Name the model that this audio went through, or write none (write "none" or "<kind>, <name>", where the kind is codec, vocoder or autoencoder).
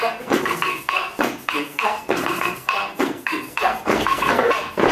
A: codec, SNAC